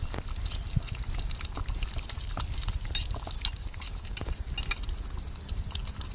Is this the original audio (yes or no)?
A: yes